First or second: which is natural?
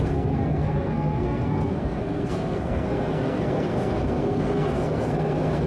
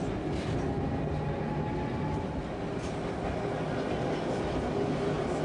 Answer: second